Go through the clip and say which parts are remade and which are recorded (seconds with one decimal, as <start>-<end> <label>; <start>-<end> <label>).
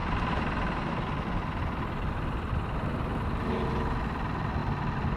0.0-2.5 recorded; 2.5-3.1 remade; 3.1-4.0 recorded; 4.0-4.6 remade; 4.6-5.2 recorded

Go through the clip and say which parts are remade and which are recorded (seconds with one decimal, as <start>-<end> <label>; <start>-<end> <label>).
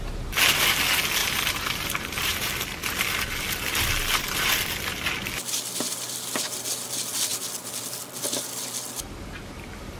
0.0-1.2 recorded; 1.2-2.5 remade; 2.5-10.0 recorded